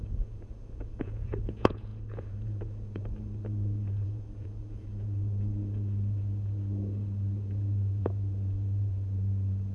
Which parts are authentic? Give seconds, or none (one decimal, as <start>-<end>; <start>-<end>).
none